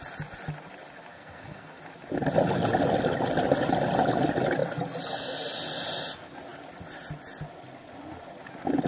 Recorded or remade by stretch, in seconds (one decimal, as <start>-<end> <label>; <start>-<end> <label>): 0.0-1.1 recorded; 1.1-1.8 remade; 1.8-8.9 recorded